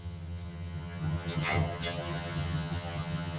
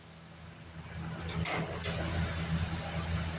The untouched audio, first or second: second